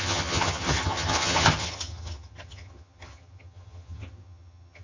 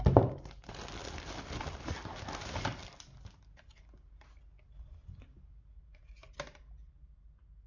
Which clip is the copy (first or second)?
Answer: first